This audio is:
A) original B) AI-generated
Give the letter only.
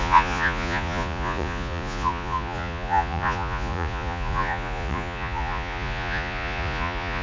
B